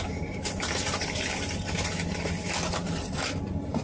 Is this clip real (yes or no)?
yes